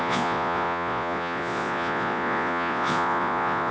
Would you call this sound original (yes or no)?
no